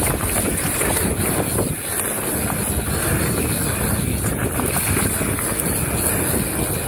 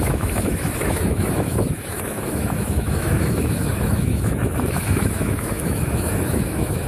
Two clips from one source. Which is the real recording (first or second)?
first